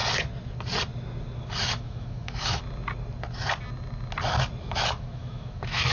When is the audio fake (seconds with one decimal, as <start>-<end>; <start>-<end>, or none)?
1.5-2.6; 4.6-5.9